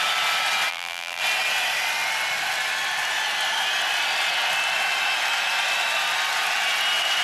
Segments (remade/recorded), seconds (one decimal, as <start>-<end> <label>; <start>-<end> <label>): 0.0-0.7 recorded; 0.7-1.2 remade; 1.2-7.2 recorded